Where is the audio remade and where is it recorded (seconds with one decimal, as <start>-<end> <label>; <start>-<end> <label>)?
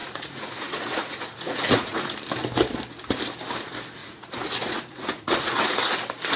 0.0-2.1 remade; 2.1-4.0 recorded; 4.0-5.9 remade; 5.9-6.4 recorded